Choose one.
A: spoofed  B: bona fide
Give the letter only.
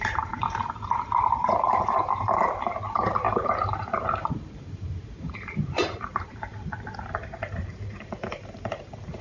A